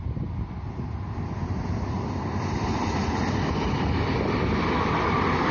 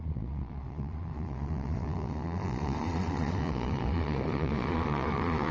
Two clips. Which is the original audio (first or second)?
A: first